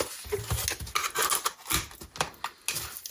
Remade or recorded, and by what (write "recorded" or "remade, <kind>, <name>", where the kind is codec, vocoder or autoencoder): recorded